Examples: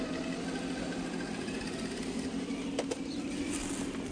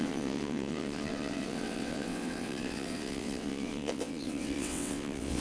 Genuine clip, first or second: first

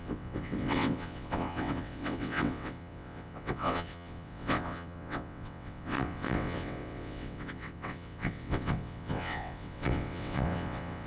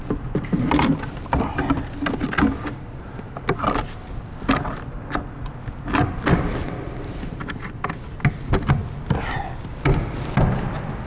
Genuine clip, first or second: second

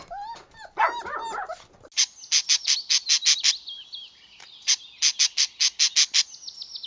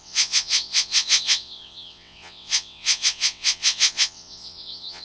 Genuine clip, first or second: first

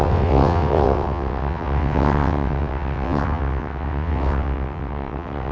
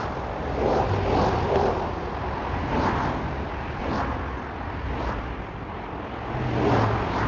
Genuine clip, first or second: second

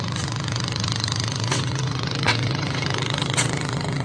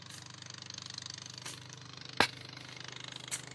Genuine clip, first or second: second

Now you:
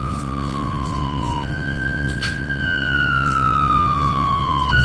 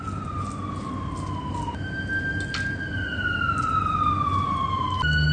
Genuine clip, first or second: second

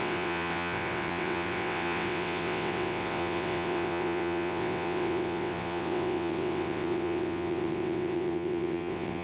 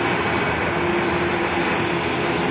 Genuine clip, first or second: second